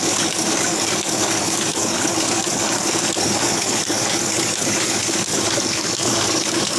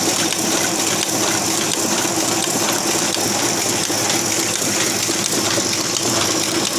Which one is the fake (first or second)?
first